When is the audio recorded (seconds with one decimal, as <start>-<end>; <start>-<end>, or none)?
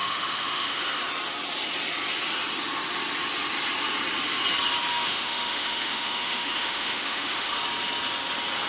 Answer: 0.8-4.9; 7.6-8.7